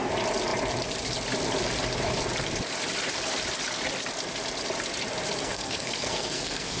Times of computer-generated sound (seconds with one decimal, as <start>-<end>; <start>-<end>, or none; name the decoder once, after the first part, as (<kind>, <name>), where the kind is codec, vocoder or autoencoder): 5.4-6.8 (codec, SNAC)

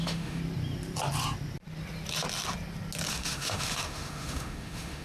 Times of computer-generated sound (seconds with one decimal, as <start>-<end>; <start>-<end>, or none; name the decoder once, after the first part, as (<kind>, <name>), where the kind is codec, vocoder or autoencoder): 0.0-0.4 (autoencoder, DAC-VAE); 3.1-5.0

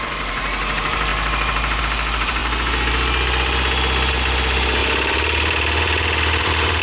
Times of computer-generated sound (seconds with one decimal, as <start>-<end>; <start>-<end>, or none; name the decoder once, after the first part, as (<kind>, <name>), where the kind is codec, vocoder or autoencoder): 0.0-2.4 (vocoder, BigVGAN v2); 4.1-6.8

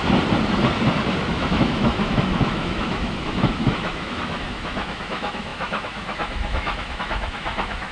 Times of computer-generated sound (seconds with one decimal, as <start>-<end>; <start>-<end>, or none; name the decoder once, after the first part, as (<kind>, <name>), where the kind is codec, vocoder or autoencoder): 1.3-7.9 (autoencoder, DAC-VAE)

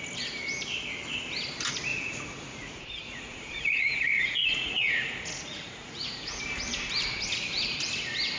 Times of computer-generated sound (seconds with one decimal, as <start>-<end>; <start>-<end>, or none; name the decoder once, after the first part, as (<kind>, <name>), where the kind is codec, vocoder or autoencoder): 1.9-6.4 (vocoder, Vocos)

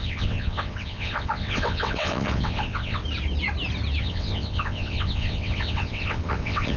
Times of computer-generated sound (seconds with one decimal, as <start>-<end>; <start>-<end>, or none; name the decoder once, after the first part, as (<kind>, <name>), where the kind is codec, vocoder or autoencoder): 0.0-3.0 (vocoder, WaveNeXt); 4.0-6.8